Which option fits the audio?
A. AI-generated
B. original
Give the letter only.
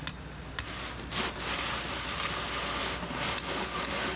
B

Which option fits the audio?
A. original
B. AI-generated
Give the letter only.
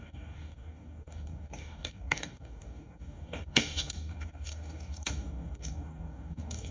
B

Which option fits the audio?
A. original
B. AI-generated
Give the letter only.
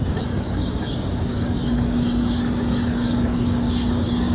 B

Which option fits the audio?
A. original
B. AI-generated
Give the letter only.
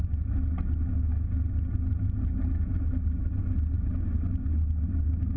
A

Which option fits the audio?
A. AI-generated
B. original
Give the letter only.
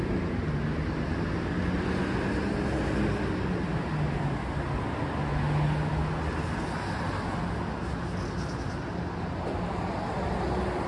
B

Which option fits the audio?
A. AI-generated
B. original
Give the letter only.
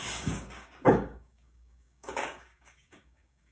A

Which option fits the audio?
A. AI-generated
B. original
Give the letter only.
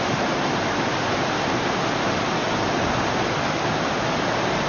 B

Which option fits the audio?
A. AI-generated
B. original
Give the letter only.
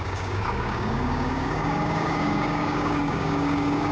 A